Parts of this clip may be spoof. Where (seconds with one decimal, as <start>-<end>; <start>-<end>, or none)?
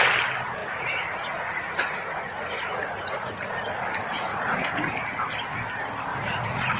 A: 0.6-3.5; 4.3-4.9; 6.1-6.8